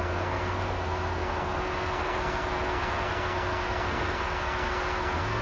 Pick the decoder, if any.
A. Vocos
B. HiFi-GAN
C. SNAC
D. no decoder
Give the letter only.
C